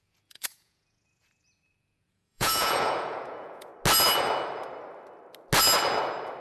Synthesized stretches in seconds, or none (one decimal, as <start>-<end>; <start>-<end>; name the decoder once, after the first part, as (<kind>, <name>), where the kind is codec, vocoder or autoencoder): 0.0-3.7 (vocoder, Vocos)